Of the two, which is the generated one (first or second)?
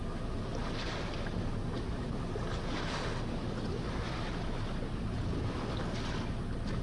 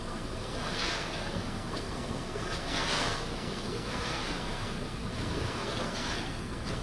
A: second